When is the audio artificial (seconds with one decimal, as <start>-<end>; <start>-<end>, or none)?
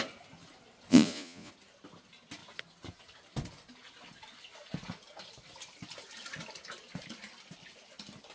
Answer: 0.9-1.5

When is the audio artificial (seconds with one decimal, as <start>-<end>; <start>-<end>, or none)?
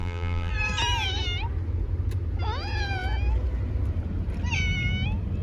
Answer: 0.0-0.5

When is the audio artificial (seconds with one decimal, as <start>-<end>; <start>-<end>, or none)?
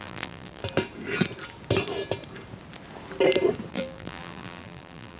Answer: 0.0-0.6; 3.7-5.2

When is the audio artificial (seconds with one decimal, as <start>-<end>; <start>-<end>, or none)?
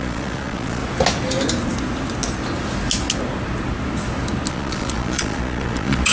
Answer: 0.0-0.8; 4.5-6.1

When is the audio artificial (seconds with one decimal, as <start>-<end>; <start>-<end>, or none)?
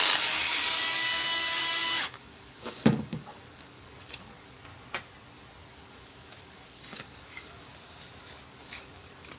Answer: 0.0-4.7; 5.7-7.7; 8.5-9.4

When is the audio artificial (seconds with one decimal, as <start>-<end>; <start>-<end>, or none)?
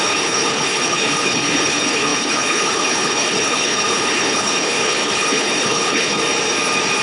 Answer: 0.0-6.2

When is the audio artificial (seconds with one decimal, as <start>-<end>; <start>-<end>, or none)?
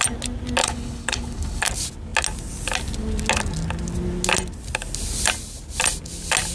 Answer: 0.6-1.7